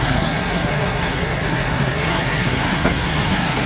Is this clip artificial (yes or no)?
yes